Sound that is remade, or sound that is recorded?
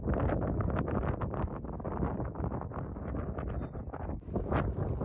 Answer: recorded